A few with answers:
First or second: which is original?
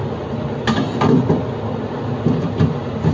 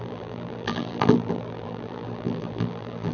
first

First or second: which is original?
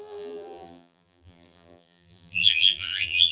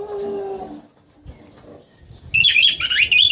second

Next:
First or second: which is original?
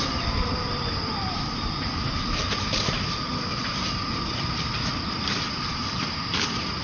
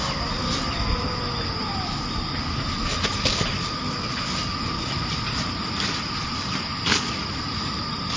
second